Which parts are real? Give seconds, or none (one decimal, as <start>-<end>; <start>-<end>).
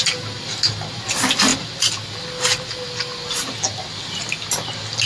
0.0-5.1